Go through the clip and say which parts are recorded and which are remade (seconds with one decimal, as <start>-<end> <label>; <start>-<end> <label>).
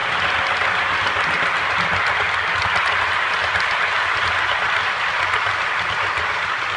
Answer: 0.0-6.8 recorded